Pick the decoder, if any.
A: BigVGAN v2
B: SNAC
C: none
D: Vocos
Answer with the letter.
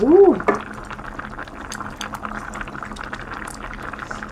C